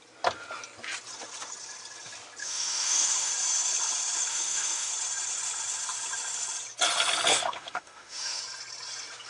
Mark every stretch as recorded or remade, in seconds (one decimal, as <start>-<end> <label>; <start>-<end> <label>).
0.0-2.4 recorded; 2.4-3.3 remade; 3.3-4.3 recorded; 4.3-4.9 remade; 4.9-7.3 recorded; 7.3-8.4 remade; 8.4-9.3 recorded